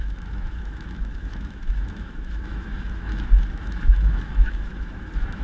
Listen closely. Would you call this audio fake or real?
fake